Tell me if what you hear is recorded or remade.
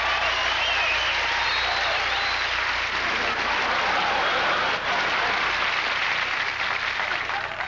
recorded